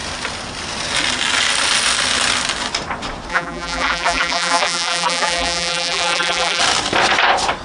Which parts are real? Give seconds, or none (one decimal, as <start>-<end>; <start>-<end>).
0.0-3.3; 6.6-7.6